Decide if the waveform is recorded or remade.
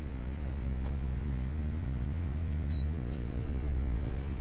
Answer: remade